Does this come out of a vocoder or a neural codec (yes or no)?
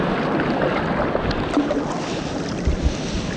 no